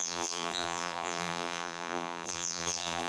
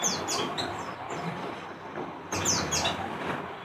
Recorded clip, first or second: second